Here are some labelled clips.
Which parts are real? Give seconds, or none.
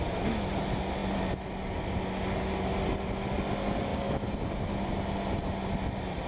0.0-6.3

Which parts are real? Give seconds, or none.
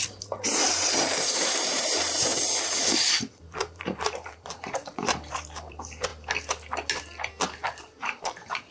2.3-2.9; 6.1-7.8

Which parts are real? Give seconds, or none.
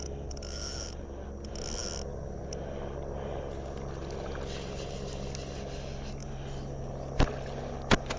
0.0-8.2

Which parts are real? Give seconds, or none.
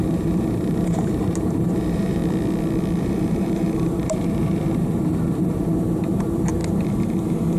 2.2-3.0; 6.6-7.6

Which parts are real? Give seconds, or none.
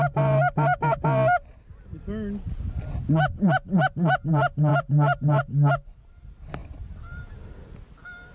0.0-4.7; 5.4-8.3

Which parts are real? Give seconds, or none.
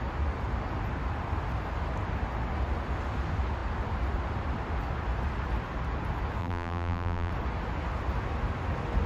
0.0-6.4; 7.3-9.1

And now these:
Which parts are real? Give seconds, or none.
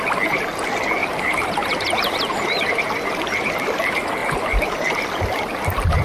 0.0-1.0; 2.7-4.2; 4.7-6.0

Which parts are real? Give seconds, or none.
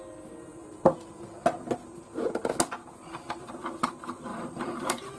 0.0-4.3